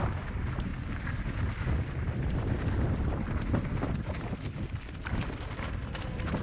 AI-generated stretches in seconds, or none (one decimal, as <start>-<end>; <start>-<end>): none